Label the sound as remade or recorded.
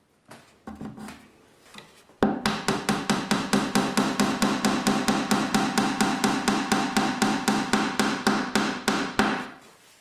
recorded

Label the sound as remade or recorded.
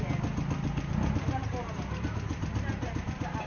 recorded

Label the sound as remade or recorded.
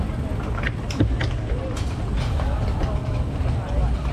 recorded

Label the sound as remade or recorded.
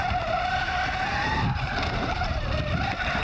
recorded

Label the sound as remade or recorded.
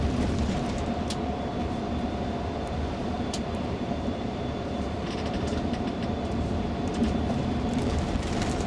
remade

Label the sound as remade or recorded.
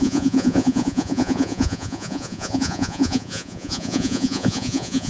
remade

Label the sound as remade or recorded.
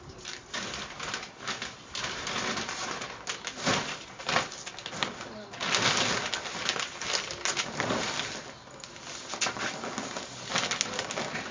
recorded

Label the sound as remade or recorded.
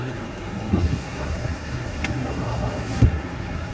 remade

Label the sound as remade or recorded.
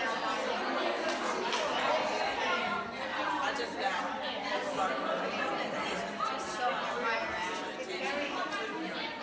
recorded